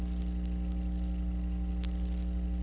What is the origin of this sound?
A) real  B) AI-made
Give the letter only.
A